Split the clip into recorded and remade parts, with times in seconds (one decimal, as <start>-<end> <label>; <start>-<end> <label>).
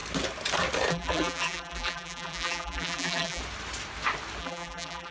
0.0-0.9 recorded; 0.9-3.4 remade; 3.4-4.4 recorded; 4.4-5.1 remade